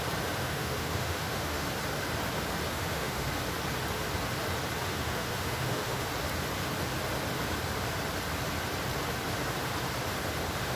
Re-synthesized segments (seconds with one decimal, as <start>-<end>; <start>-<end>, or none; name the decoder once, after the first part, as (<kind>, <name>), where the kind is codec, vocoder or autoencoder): 0.4-1.7 (autoencoder, DAC-VAE); 2.7-3.3; 4.9-6.1